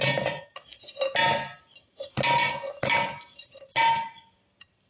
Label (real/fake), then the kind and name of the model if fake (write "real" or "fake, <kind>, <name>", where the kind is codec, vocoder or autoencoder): real